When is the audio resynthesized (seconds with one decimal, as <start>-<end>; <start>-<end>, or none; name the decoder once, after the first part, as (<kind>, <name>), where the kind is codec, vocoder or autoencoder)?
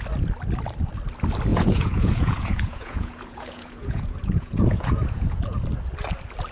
1.5-5.4 (vocoder, Vocos)